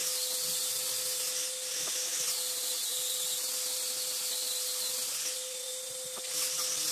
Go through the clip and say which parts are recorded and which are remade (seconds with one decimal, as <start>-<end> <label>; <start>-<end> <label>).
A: 0.0-6.9 recorded